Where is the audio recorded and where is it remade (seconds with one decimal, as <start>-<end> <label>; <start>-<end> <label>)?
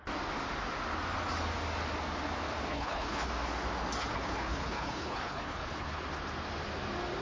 0.0-2.7 recorded; 2.7-3.3 remade; 3.3-4.0 recorded; 4.0-6.0 remade; 6.0-7.2 recorded